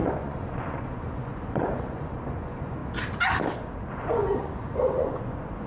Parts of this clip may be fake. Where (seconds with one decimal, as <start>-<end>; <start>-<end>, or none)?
0.0-2.8; 3.9-5.7